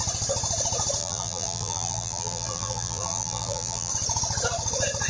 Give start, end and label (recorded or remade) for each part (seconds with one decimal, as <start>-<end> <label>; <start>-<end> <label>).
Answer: 0.0-1.0 recorded; 1.0-3.9 remade; 3.9-5.1 recorded